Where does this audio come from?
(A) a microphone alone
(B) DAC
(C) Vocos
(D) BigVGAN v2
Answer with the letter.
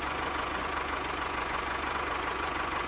C